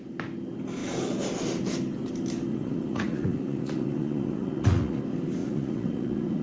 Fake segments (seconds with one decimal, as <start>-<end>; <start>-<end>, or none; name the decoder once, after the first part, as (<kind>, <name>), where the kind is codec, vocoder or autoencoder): 2.5-5.0 (vocoder, Vocos); 5.4-6.4